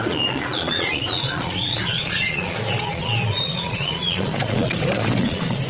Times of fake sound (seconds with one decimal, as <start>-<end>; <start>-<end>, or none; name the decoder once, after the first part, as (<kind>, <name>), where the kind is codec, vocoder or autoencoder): 0.0-5.7 (vocoder, Vocos)